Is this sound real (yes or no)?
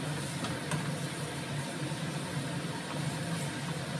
yes